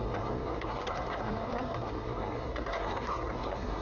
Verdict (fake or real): fake